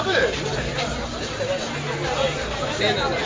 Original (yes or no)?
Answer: no